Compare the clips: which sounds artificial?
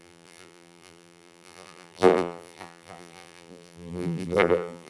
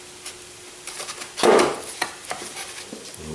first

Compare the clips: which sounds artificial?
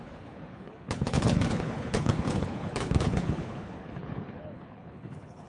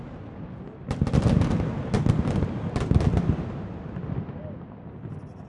first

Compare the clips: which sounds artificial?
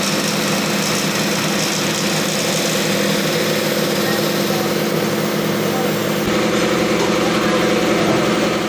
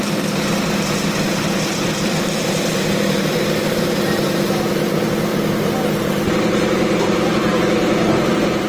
second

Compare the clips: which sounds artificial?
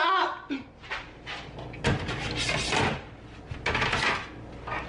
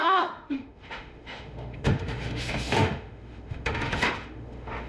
second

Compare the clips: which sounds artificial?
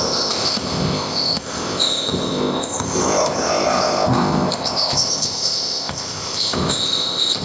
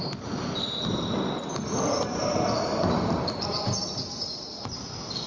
first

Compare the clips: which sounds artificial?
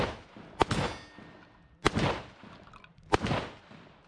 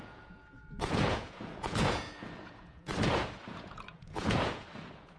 second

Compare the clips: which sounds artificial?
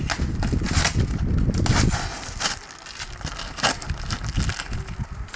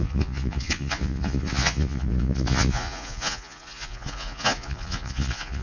second